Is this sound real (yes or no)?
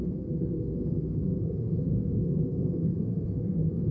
no